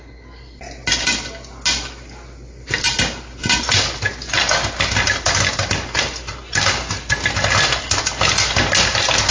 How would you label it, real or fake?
real